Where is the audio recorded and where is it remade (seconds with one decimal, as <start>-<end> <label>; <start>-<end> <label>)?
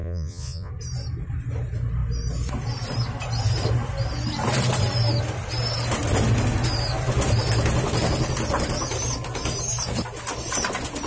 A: 0.0-0.7 remade; 0.7-11.1 recorded